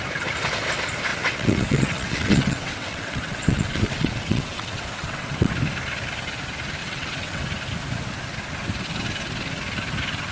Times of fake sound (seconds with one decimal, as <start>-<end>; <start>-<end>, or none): 1.1-5.5; 6.8-7.4